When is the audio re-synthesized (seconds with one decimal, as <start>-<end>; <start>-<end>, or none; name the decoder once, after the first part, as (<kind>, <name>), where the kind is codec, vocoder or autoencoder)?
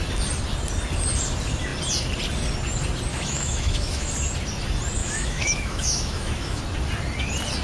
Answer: 3.1-4.1 (autoencoder, DAC-VAE); 5.0-6.6